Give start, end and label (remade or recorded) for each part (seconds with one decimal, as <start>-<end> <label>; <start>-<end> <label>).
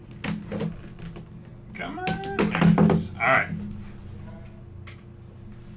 0.0-5.8 recorded